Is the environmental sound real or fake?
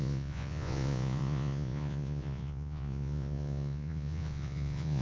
fake